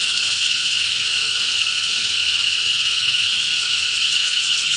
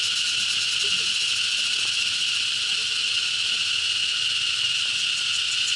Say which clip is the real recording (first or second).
second